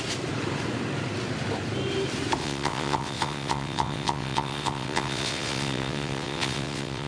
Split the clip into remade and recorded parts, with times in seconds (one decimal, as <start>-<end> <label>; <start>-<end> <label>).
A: 0.0-2.4 recorded; 2.4-7.1 remade